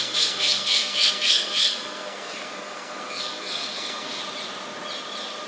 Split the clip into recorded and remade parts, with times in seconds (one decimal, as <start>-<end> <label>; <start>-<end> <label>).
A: 0.0-4.2 remade; 4.2-5.5 recorded